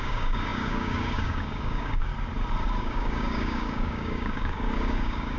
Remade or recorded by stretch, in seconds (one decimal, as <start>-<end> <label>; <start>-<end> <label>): 0.0-2.1 remade; 2.1-2.8 recorded; 2.8-5.4 remade